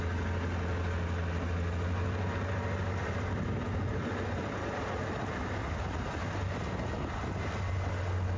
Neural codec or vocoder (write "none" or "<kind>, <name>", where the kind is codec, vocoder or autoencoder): none